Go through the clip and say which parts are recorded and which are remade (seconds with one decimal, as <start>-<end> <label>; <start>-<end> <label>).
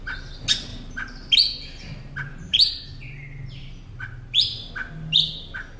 0.0-0.7 recorded; 0.7-1.3 remade; 1.3-2.3 recorded; 2.3-2.8 remade; 2.8-3.6 recorded; 3.6-4.7 remade; 4.7-5.8 recorded